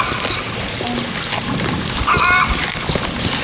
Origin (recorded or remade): recorded